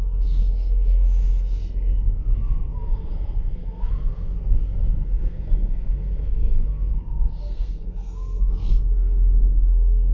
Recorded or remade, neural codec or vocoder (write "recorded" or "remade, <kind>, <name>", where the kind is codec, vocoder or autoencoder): remade, codec, SNAC